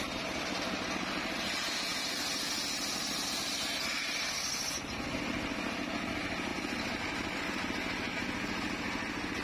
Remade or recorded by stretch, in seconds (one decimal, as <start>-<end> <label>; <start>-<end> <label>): 0.0-9.4 recorded